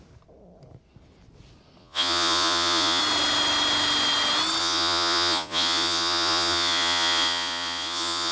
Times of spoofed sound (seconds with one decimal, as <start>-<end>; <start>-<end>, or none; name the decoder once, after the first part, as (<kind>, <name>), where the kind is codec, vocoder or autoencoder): 1.8-3.0 (vocoder, Vocos); 4.6-8.3